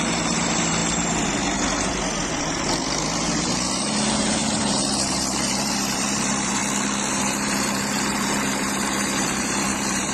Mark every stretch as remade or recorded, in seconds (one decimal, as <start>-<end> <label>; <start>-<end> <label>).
0.0-0.8 remade; 0.8-2.4 recorded; 2.4-6.6 remade; 6.6-7.1 recorded; 7.1-10.1 remade